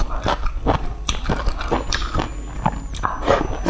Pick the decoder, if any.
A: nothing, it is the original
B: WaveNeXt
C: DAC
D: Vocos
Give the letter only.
A